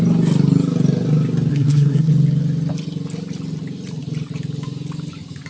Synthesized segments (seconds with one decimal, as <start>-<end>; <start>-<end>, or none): 1.5-2.1